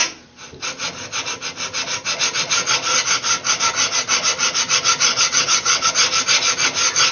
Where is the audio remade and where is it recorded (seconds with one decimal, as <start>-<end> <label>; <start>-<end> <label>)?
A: 0.0-5.1 recorded; 5.1-5.9 remade; 5.9-7.1 recorded